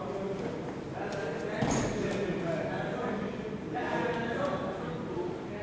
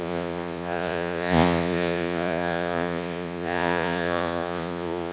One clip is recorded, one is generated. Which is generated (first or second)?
second